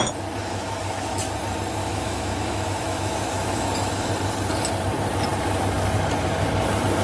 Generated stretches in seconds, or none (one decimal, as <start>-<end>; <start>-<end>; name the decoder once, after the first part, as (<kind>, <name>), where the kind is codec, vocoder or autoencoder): 0.4-1.2 (autoencoder, DAC-VAE); 1.8-4.1